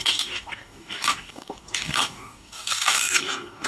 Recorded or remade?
remade